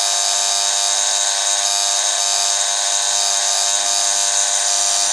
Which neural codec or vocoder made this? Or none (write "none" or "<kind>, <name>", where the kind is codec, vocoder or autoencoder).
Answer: none